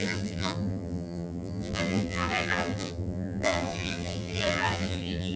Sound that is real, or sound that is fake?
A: fake